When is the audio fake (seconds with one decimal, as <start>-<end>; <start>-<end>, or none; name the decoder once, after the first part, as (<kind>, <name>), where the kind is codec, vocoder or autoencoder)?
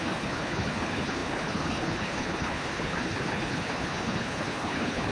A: 0.0-5.1 (codec, HILCodec)